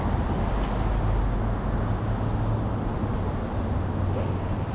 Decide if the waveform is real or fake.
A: real